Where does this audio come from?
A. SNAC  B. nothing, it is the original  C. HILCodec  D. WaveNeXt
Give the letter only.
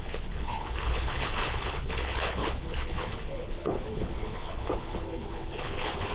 C